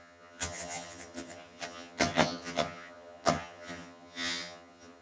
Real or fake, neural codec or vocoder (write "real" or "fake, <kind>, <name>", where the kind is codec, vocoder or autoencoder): fake, vocoder, HiFi-GAN